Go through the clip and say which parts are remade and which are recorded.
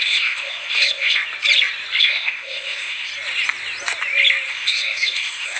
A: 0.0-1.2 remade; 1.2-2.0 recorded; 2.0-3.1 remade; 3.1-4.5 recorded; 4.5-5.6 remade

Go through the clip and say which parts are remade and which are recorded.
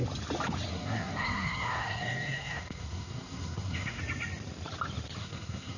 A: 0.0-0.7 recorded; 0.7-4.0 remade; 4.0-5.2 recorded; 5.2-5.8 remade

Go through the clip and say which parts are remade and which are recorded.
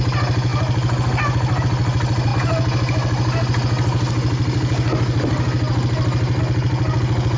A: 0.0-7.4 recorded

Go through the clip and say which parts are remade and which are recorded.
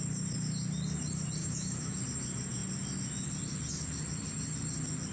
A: 0.0-1.4 recorded; 1.4-2.0 remade; 2.0-5.1 recorded